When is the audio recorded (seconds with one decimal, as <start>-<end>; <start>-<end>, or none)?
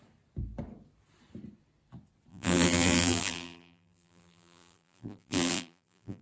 0.0-2.3